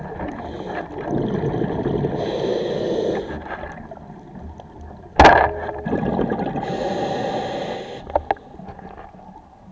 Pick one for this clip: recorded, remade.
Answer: recorded